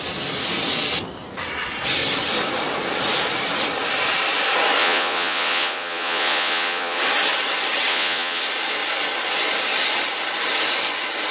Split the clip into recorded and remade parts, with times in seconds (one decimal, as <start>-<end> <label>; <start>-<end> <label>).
0.0-4.8 recorded; 4.8-7.0 remade; 7.0-7.9 recorded; 7.9-8.4 remade; 8.4-11.3 recorded